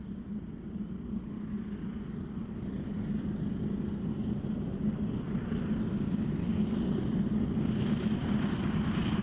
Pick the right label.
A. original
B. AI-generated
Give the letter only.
A